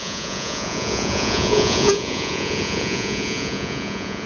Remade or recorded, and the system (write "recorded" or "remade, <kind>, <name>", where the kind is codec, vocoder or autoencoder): remade, vocoder, Vocos